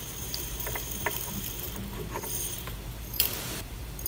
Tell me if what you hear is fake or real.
fake